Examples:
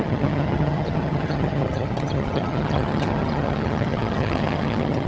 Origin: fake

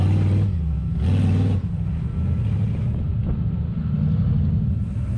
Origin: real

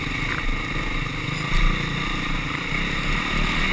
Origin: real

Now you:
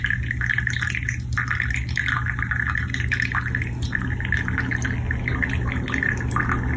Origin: real